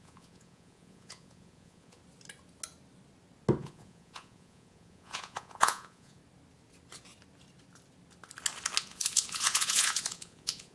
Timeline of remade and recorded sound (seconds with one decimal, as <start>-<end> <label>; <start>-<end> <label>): 0.0-2.0 remade; 2.0-3.6 recorded; 3.6-6.2 remade; 6.2-8.8 recorded; 8.8-10.7 remade